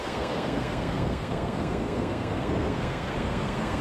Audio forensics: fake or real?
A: fake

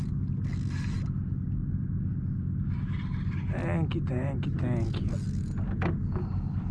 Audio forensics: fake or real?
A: real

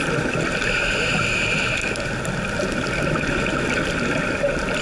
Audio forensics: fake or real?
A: real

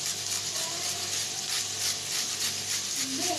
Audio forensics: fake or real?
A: real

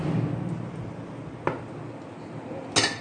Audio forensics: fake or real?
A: real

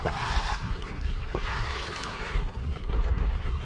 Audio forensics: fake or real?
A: fake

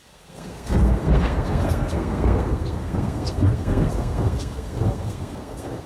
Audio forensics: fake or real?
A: fake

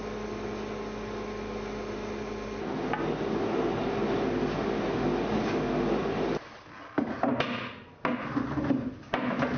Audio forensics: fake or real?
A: real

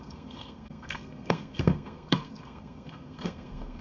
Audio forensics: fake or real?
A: fake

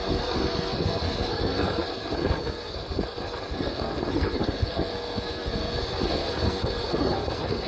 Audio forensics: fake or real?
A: fake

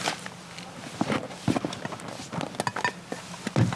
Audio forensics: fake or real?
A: real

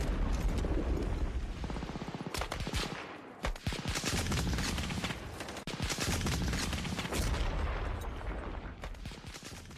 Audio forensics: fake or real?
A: real